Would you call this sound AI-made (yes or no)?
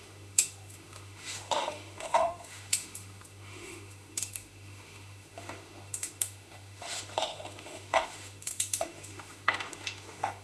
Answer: yes